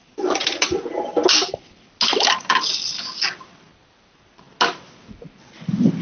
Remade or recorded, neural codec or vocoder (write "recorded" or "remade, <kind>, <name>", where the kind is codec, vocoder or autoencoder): recorded